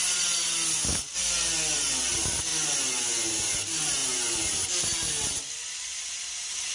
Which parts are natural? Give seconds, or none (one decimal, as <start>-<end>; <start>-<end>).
0.0-6.7